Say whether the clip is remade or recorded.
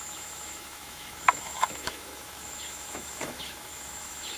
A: remade